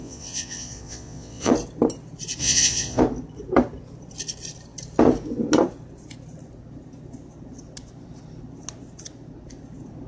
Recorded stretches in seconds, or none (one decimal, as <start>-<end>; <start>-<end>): 1.5-2.4; 3.0-10.1